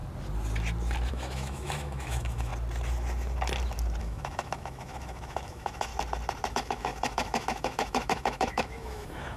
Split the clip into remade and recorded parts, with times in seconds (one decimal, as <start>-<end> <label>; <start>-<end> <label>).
0.0-1.1 recorded; 1.1-2.5 remade; 2.5-4.0 recorded; 4.0-5.9 remade; 5.9-6.5 recorded; 6.5-9.4 remade